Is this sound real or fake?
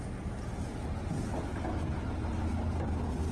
real